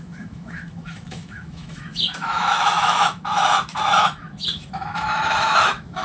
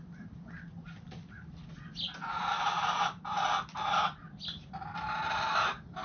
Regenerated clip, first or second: first